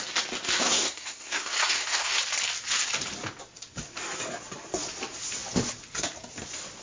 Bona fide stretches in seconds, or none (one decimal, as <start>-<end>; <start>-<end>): 0.0-0.6; 2.2-6.8